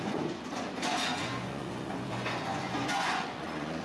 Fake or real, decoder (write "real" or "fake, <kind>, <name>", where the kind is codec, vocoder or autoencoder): fake, vocoder, Vocos